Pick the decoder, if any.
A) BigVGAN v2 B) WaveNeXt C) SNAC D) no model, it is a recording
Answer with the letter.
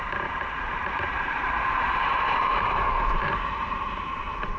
A